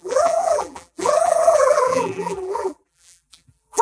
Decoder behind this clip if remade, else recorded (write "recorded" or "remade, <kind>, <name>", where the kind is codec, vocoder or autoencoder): remade, vocoder, BigVGAN v2